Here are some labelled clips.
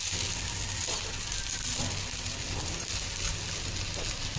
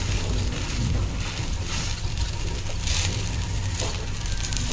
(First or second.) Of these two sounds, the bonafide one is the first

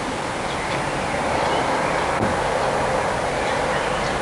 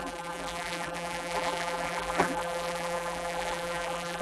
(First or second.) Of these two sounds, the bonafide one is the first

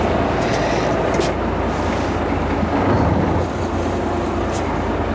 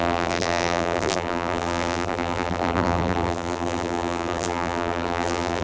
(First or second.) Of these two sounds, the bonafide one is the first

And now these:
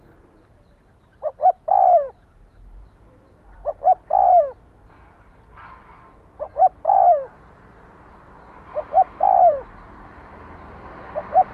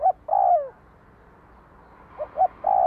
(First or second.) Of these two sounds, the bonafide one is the second